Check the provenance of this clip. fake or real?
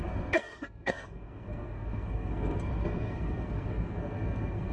fake